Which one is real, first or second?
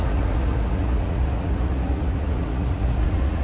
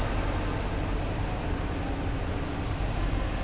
second